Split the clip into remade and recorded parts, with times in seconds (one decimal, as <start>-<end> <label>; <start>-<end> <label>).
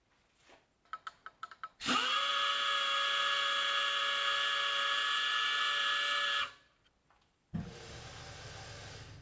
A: 0.0-9.2 recorded